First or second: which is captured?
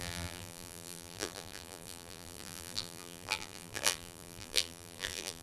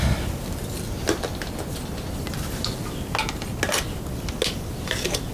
second